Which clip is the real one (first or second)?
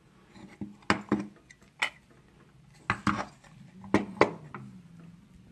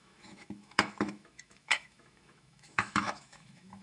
first